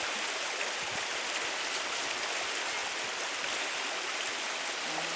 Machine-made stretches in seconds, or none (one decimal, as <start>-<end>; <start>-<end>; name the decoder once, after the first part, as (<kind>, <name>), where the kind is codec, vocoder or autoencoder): none